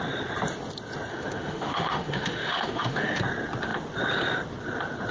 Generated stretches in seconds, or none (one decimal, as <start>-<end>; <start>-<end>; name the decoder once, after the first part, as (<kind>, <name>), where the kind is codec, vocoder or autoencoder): 1.1-3.2 (autoencoder, DAC-VAE)